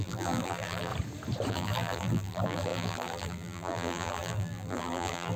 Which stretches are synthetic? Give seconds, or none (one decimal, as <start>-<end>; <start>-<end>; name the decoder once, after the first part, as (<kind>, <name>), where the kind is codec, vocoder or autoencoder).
0.0-0.9 (vocoder, BigVGAN v2); 1.5-5.4